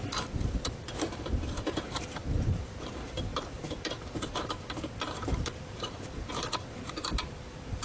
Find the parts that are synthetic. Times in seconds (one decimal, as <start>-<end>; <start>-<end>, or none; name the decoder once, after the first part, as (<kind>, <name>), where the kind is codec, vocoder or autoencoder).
0.0-7.8 (vocoder, BigVGAN v2)